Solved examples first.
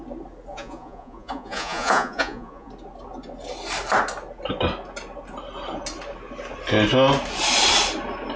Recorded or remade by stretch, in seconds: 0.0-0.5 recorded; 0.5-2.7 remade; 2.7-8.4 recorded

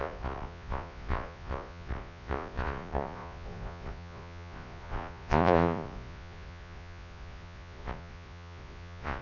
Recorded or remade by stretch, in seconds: 0.0-9.2 remade

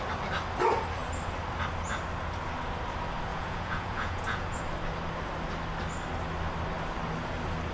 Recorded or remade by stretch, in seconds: 0.0-3.3 recorded; 3.3-4.6 remade; 4.6-7.7 recorded

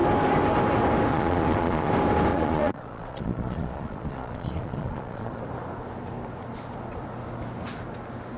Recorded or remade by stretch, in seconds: 0.0-1.1 recorded; 1.1-1.9 remade; 1.9-2.3 recorded; 2.3-5.4 remade; 5.4-8.4 recorded